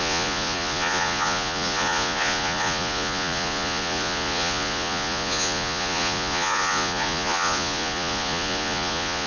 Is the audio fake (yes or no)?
yes